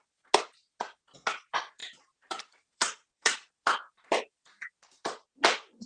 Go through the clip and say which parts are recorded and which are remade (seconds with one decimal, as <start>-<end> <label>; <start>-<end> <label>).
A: 0.0-1.8 recorded; 1.8-5.3 remade; 5.3-5.9 recorded